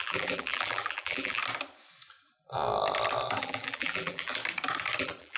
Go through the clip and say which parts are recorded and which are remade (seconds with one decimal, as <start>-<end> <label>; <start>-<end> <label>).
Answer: 0.0-1.4 remade; 1.4-3.4 recorded; 3.4-4.4 remade; 4.4-5.0 recorded; 5.0-5.4 remade